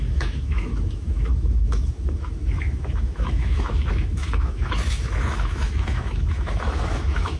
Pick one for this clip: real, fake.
fake